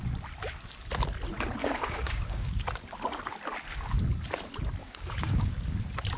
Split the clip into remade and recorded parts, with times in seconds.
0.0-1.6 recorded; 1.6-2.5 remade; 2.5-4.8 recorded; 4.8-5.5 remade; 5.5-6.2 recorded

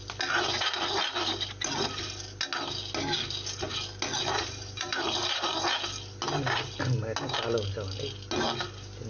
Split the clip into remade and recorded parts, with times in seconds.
0.0-4.2 recorded; 4.2-5.5 remade; 5.5-9.1 recorded

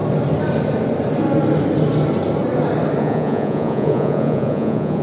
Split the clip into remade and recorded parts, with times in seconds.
0.0-3.0 recorded; 3.0-5.0 remade

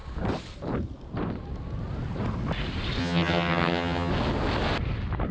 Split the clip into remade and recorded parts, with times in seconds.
0.0-3.0 recorded; 3.0-4.1 remade; 4.1-5.3 recorded

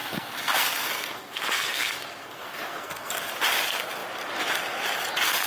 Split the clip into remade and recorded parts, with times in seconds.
0.0-3.3 remade; 3.3-5.5 recorded

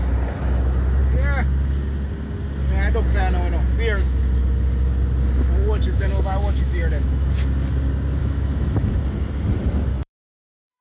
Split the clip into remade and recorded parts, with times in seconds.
0.0-5.6 recorded; 5.6-7.3 remade; 7.3-8.2 recorded; 8.2-8.9 remade; 8.9-9.9 recorded; 9.9-10.8 remade

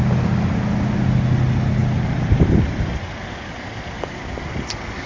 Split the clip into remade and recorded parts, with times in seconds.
0.0-5.1 recorded